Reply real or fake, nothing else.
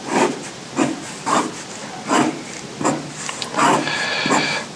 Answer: real